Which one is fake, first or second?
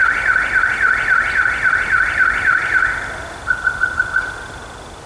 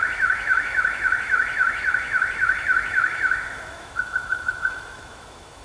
second